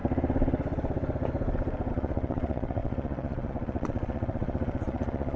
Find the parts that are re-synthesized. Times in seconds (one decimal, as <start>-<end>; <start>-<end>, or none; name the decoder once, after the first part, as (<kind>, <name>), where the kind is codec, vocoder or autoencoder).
1.9-5.4 (vocoder, Vocos)